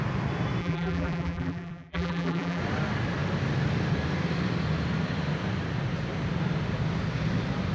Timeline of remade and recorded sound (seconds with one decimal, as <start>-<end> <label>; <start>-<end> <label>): 0.0-0.6 recorded; 0.6-2.6 remade; 2.6-7.7 recorded